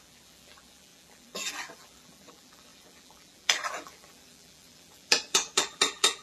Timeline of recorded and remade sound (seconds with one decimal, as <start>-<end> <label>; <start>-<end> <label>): 0.0-6.2 remade